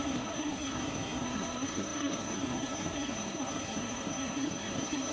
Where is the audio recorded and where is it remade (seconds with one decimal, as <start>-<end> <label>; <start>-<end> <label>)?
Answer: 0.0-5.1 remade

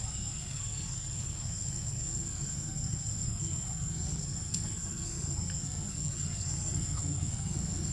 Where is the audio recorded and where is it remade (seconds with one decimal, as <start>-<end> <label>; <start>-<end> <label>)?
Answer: 0.0-7.9 remade

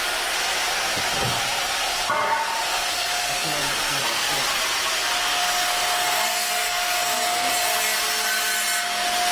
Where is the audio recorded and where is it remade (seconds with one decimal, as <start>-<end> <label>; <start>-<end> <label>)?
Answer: 0.0-2.7 recorded; 2.7-4.3 remade; 4.3-5.3 recorded; 5.3-7.5 remade; 7.5-9.3 recorded